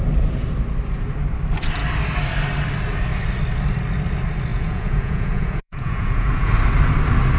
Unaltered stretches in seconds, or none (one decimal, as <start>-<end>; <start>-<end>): 0.0-4.5; 6.5-7.4